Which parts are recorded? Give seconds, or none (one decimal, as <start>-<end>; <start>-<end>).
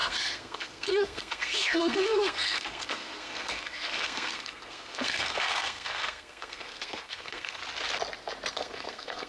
7.6-8.5